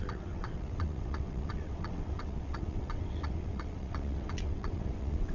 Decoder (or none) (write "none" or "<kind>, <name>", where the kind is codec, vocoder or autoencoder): vocoder, WaveNeXt